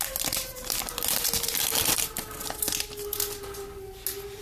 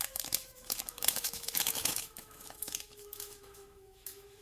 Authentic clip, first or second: first